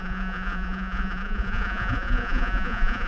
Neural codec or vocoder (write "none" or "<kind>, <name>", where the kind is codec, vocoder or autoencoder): vocoder, Vocos